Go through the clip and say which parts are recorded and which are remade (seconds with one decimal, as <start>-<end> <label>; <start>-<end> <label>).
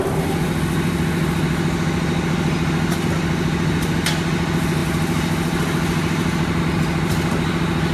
0.0-7.9 recorded